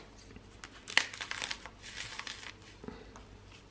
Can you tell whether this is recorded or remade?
recorded